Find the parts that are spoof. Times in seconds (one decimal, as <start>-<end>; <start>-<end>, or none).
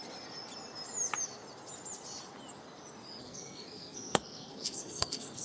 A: 3.2-5.4